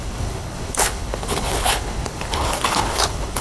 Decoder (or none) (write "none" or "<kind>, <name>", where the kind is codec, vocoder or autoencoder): codec, HILCodec